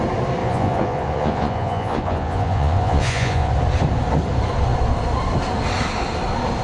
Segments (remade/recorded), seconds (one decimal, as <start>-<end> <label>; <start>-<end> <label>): 0.0-0.4 recorded; 0.4-3.5 remade; 3.5-6.6 recorded